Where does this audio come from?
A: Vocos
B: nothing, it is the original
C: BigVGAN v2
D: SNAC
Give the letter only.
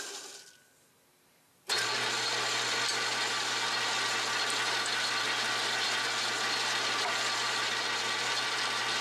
B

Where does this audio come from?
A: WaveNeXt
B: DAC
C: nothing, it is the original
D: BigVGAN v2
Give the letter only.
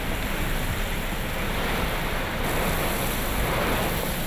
C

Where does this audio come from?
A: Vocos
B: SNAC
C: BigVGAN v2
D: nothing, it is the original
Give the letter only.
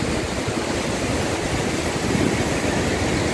D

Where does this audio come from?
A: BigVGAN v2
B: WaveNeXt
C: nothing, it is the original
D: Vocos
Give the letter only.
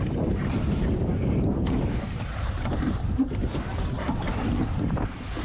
A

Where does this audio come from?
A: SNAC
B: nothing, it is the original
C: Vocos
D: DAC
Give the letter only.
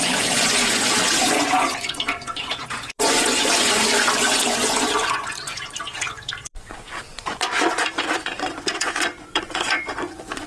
C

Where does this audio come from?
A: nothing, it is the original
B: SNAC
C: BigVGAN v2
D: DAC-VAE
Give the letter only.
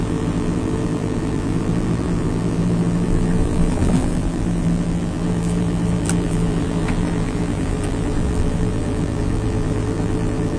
C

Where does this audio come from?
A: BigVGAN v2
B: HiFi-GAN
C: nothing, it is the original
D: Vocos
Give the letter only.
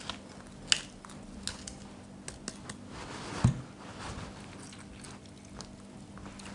C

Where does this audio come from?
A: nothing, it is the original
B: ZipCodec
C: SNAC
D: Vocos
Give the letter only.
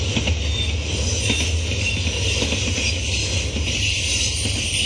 A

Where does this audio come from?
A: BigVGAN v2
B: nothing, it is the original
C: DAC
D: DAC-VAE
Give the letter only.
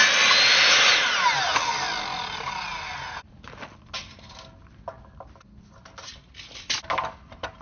B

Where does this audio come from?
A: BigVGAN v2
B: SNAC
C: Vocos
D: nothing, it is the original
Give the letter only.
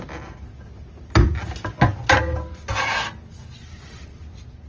D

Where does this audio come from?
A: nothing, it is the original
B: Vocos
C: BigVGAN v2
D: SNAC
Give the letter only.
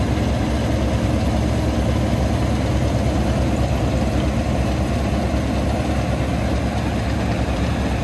A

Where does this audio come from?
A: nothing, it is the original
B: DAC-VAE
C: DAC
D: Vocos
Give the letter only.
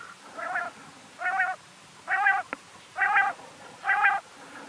A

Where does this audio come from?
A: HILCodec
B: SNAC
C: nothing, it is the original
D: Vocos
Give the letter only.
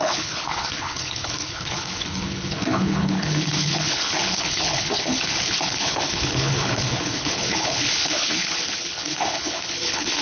A